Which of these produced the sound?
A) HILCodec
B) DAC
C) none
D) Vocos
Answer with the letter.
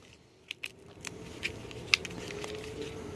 C